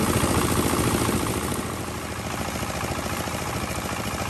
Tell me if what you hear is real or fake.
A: real